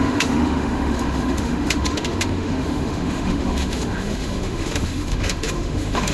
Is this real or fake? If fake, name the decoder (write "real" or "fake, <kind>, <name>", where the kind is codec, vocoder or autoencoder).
fake, autoencoder, DAC-VAE